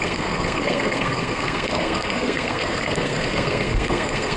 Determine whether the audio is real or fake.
fake